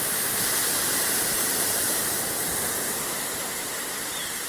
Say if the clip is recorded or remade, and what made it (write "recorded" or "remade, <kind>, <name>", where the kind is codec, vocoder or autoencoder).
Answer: remade, vocoder, BigVGAN v2